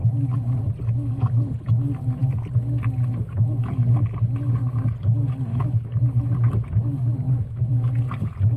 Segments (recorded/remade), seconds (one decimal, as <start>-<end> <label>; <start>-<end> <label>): 0.0-5.5 recorded; 5.5-6.0 remade; 6.0-7.1 recorded; 7.1-7.7 remade; 7.7-8.6 recorded